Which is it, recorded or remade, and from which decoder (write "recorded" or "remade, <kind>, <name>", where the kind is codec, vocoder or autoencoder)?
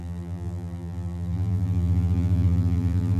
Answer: remade, vocoder, BigVGAN v2